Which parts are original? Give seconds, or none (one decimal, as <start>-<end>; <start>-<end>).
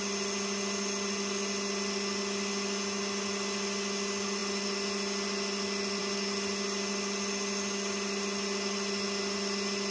0.0-9.9